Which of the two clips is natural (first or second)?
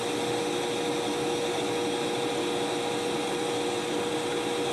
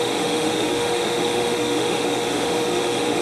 first